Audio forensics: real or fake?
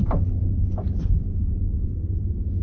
real